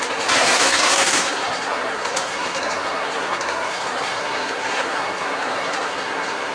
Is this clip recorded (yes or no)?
no